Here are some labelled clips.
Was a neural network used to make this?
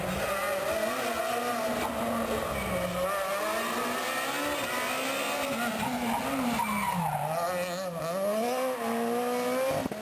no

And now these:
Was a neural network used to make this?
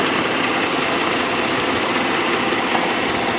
no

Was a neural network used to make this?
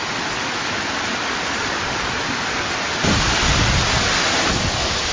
no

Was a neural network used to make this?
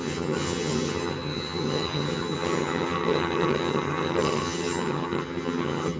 yes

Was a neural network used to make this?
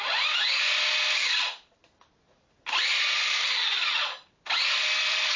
no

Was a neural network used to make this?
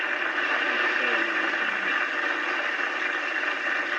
no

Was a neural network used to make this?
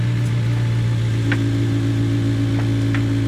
no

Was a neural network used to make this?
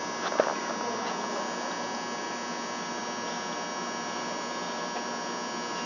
no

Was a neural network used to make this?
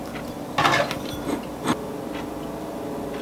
no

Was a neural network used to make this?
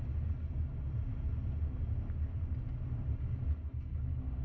no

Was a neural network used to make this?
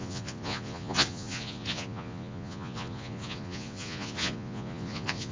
yes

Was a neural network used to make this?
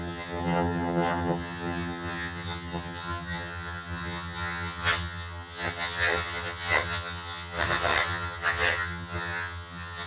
yes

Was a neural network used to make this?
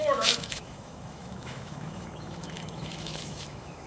yes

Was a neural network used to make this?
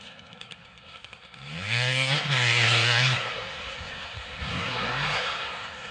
yes